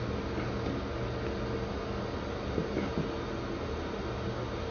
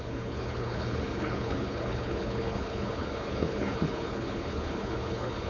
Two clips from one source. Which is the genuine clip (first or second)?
first